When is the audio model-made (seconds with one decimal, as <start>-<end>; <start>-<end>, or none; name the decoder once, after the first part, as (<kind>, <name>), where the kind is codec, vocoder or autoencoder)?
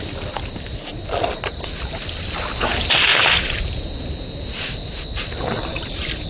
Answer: 3.1-3.6 (vocoder, BigVGAN v2); 5.7-6.3